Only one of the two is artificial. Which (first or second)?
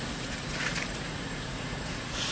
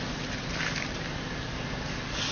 first